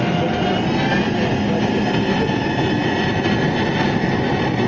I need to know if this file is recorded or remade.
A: recorded